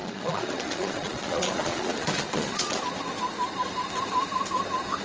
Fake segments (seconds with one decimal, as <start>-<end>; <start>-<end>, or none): 0.0-2.8